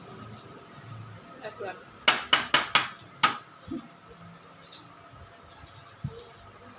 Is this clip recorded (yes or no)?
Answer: yes